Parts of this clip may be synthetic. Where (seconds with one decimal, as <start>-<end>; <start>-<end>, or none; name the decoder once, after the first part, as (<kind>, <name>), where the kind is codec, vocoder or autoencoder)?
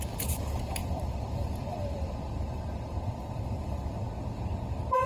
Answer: 0.8-3.9 (vocoder, BigVGAN v2)